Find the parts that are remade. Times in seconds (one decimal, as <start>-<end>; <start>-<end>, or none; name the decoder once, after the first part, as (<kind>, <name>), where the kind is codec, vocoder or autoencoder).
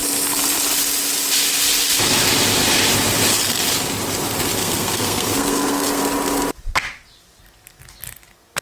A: 4.6-6.0 (codec, SNAC)